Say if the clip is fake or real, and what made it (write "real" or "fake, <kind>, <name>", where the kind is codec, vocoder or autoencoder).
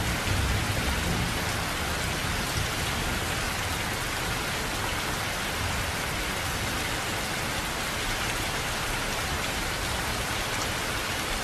real